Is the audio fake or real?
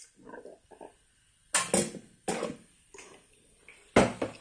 real